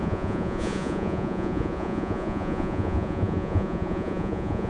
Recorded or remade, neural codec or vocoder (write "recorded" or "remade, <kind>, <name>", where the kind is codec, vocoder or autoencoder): remade, vocoder, Vocos